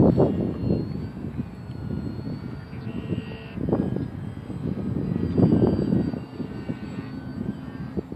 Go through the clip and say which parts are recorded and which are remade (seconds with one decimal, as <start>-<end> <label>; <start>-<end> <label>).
0.0-8.2 recorded